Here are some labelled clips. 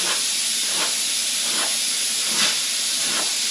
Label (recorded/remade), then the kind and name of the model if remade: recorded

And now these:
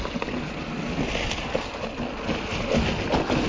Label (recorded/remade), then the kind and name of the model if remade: recorded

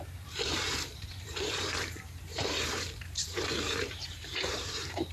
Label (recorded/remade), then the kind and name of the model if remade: remade, vocoder, BigVGAN v2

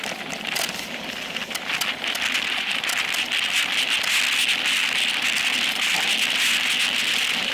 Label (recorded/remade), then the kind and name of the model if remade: recorded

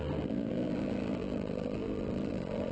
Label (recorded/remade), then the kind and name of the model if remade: remade, vocoder, BigVGAN v2